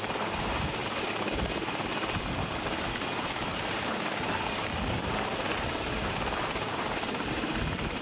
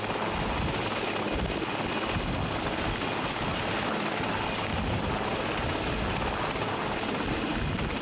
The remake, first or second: first